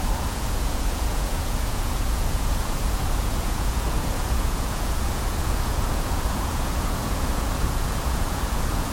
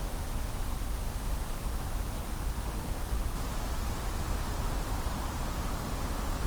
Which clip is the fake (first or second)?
first